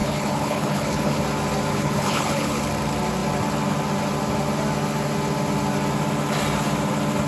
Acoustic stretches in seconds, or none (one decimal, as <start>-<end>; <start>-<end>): 1.2-1.7; 2.6-7.3